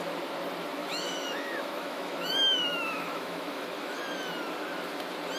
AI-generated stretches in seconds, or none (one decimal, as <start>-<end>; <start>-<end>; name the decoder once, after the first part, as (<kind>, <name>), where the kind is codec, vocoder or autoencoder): 0.8-4.0 (autoencoder, DAC-VAE)